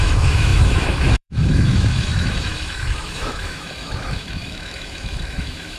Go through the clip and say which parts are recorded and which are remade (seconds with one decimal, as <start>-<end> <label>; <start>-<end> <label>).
0.0-5.8 remade